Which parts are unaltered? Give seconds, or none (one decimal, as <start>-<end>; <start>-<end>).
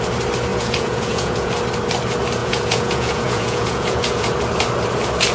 0.0-0.5; 1.5-2.4; 4.3-5.3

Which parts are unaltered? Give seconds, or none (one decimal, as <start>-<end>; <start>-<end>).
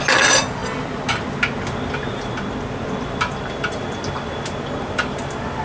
0.0-5.6